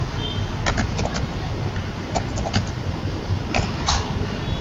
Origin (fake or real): real